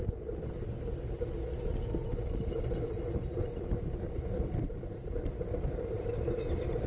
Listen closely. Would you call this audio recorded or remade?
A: recorded